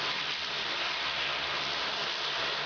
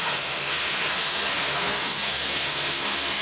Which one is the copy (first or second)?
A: second